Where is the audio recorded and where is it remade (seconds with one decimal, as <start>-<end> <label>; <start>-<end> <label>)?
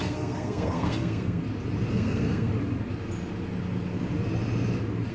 0.0-1.4 remade; 1.4-1.9 recorded; 1.9-2.5 remade; 2.5-5.1 recorded